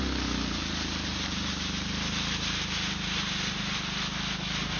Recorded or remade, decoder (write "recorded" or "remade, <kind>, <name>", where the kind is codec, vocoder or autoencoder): recorded